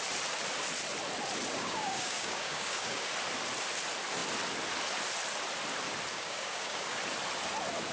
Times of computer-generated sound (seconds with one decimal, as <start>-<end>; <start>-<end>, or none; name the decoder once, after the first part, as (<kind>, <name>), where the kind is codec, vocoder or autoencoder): 1.5-3.1 (codec, DAC); 6.1-7.0